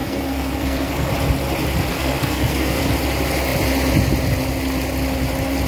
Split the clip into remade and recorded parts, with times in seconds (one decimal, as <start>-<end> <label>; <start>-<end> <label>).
0.0-1.1 remade; 1.1-1.9 recorded; 1.9-2.8 remade; 2.8-5.7 recorded